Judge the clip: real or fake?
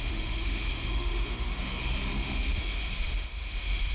fake